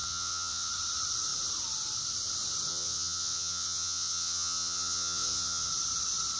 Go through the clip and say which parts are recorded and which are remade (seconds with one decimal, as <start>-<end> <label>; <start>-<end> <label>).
0.0-0.7 remade; 0.7-2.7 recorded; 2.7-5.7 remade; 5.7-6.4 recorded

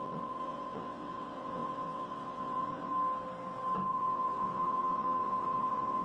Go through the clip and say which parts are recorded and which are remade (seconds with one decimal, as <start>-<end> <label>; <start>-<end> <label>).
0.0-2.9 remade; 2.9-3.9 recorded; 3.9-6.0 remade

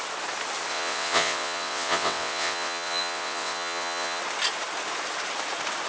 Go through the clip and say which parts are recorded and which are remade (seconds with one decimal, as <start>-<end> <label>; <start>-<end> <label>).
0.0-0.7 recorded; 0.7-4.2 remade; 4.2-5.9 recorded

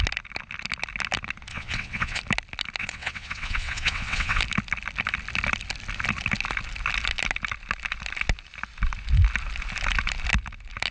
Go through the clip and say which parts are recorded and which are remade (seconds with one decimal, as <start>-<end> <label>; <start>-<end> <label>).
0.0-1.5 recorded; 1.5-2.2 remade; 2.2-2.8 recorded; 2.8-4.4 remade; 4.4-10.9 recorded

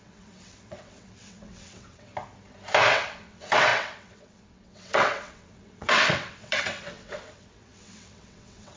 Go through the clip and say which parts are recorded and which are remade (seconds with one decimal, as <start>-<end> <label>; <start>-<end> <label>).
0.0-2.1 remade; 2.1-2.9 recorded; 2.9-8.8 remade